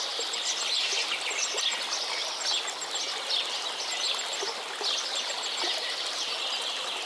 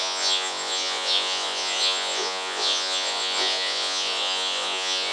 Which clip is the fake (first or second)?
second